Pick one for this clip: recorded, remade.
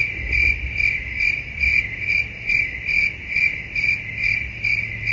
recorded